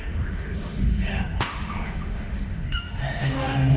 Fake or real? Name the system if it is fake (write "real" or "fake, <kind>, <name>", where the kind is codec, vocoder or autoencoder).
fake, autoencoder, DAC-VAE